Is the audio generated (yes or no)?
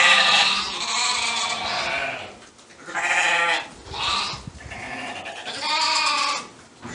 no